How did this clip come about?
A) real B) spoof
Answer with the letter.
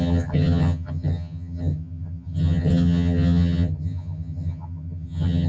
B